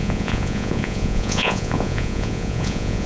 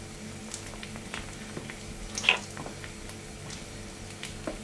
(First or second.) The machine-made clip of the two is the first